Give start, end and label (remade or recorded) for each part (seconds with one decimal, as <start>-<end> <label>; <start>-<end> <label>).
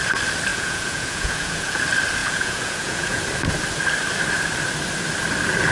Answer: 0.0-0.5 recorded; 0.5-1.8 remade; 1.8-2.2 recorded; 2.2-3.2 remade; 3.2-5.7 recorded